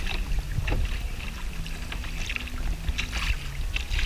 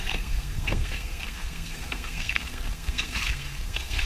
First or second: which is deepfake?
second